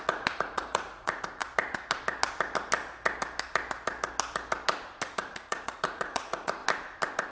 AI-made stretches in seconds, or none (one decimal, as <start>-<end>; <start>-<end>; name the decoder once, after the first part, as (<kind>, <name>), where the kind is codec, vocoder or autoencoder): 0.0-1.4 (vocoder, Vocos); 5.3-6.6